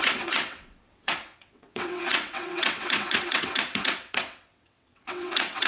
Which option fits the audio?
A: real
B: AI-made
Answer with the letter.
B